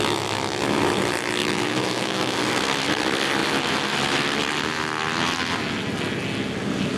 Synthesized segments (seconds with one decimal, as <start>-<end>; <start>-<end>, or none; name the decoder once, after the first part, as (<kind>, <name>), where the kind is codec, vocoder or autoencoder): 1.4-2.4 (autoencoder, DAC-VAE)